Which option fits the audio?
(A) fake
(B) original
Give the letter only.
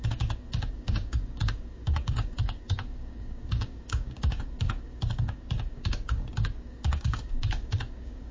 A